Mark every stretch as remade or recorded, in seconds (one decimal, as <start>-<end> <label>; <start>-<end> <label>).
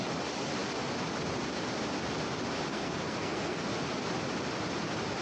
0.0-2.7 recorded; 2.7-3.6 remade; 3.6-5.2 recorded